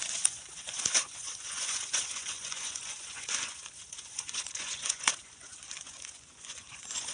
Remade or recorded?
remade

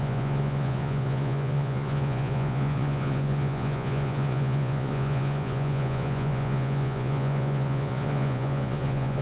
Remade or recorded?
remade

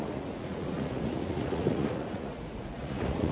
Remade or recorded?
remade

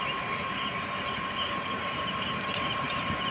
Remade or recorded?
recorded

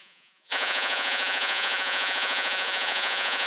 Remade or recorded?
remade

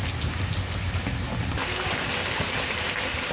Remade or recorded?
recorded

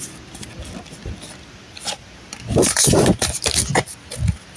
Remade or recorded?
recorded